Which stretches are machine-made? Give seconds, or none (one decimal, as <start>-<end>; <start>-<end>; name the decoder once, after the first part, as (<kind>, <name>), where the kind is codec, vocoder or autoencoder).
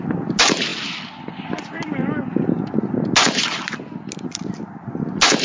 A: none